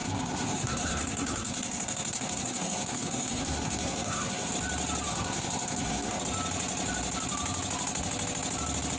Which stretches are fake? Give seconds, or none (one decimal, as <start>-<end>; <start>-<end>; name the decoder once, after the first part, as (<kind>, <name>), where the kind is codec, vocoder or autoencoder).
0.0-4.5 (codec, SNAC); 5.1-6.2